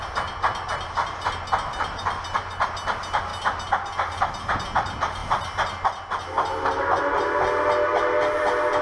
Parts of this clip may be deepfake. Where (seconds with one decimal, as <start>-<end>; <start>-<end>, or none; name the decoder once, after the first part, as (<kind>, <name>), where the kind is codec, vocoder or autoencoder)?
none